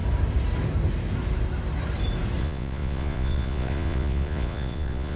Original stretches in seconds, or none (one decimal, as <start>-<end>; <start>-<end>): 0.0-2.4

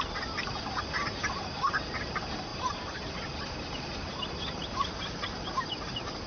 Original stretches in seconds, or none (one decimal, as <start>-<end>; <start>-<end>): 0.0-2.5; 3.5-6.3

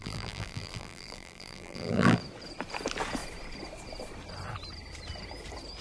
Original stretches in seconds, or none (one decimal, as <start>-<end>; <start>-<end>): 2.2-5.8